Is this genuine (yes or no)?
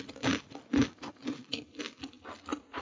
yes